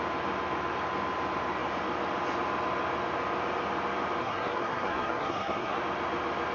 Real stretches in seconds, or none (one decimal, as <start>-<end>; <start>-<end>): 0.0-4.2; 5.8-6.5